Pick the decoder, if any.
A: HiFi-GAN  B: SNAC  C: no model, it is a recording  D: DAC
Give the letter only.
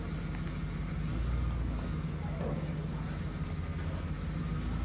C